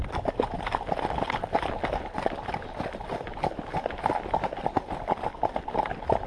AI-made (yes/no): no